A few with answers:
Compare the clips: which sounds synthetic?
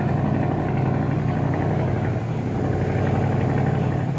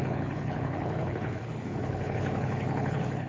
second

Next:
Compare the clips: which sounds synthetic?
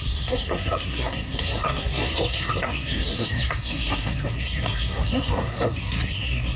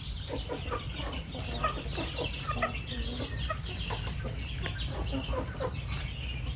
first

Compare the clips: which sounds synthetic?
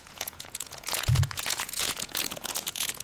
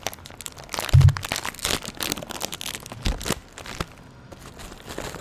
first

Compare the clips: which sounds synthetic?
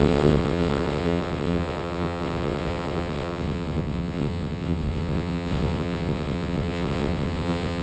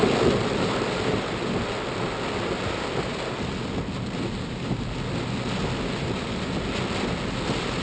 first